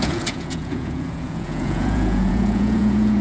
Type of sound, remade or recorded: remade